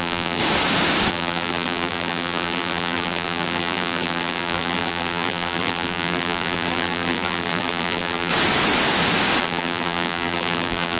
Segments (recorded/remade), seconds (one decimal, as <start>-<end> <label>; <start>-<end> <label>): 0.0-0.4 remade; 0.4-1.1 recorded; 1.1-8.3 remade; 8.3-9.4 recorded; 9.4-11.0 remade